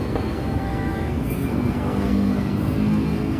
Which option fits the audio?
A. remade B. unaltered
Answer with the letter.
A